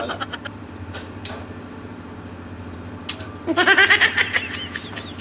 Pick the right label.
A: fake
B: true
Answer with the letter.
B